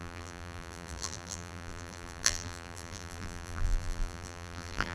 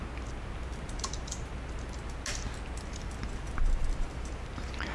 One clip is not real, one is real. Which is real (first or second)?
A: second